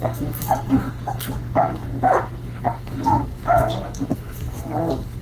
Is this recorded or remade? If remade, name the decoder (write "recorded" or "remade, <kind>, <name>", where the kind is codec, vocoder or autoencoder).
remade, codec, SNAC